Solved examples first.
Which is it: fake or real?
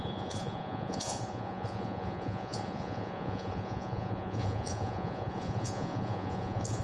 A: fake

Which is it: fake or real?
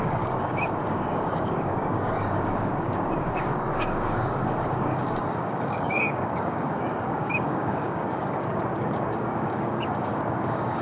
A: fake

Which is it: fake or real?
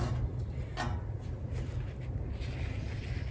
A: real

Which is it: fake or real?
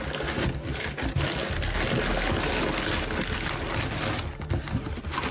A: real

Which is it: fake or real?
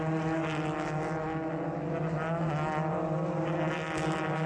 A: real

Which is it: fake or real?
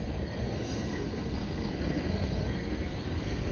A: fake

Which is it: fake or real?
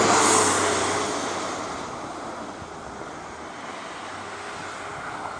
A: real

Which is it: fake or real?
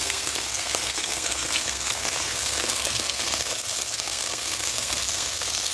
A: fake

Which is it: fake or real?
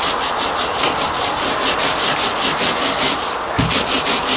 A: real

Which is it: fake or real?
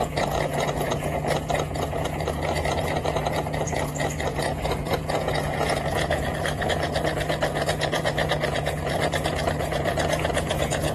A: fake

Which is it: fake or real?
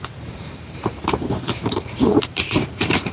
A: fake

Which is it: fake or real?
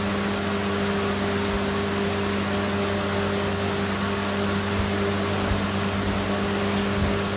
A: real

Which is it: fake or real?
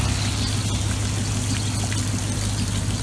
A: real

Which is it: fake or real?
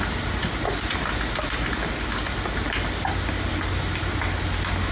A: real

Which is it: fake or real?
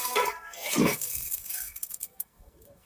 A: fake